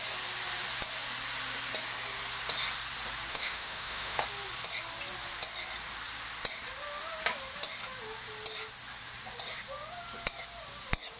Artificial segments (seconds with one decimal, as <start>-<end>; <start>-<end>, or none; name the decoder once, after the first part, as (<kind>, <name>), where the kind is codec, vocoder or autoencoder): 3.3-4.2 (autoencoder, DAC-VAE)

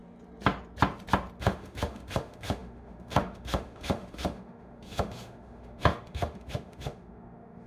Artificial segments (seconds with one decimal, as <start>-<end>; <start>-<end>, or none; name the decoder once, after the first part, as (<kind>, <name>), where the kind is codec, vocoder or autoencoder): 1.4-7.7 (autoencoder, DAC-VAE)

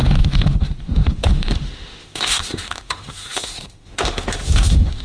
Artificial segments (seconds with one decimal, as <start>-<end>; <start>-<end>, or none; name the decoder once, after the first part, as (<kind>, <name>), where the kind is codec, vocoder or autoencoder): 0.0-5.0 (autoencoder, DAC-VAE)

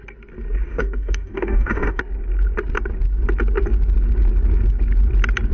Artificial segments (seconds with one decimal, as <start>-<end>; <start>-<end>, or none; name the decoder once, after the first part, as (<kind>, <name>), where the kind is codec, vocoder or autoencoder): 0.7-2.0 (autoencoder, DAC-VAE)